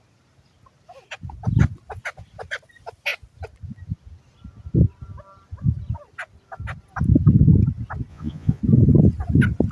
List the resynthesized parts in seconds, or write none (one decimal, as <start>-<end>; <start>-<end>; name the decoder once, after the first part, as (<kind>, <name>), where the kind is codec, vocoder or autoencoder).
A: 8.1-8.6 (vocoder, Vocos)